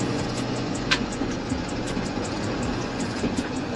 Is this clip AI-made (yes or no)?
yes